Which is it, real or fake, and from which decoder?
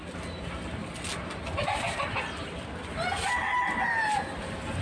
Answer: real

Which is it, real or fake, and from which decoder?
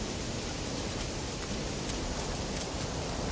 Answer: real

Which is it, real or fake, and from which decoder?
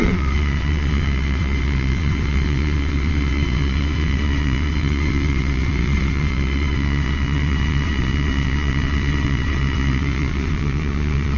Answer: fake, vocoder, WaveNeXt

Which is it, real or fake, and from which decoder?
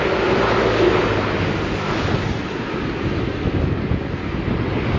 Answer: real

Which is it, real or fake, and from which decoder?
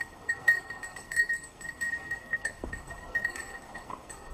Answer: fake, codec, SNAC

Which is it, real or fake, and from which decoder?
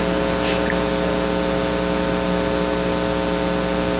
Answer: real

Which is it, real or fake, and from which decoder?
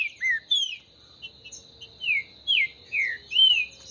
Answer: real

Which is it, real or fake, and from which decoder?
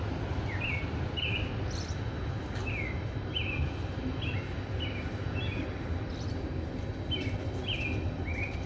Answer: real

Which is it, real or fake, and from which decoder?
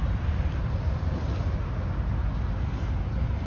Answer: real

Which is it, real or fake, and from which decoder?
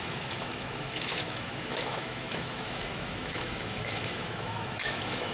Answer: fake, autoencoder, DAC-VAE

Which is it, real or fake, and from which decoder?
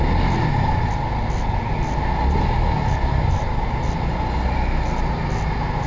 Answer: real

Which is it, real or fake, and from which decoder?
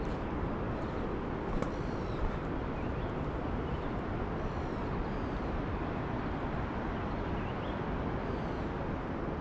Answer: real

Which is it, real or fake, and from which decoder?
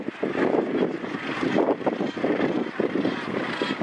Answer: real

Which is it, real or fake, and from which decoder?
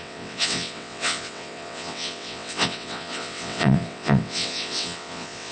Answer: fake, vocoder, WaveNeXt